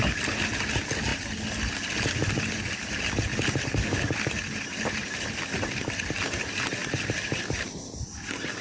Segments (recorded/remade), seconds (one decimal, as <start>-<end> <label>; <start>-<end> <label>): 0.0-8.6 recorded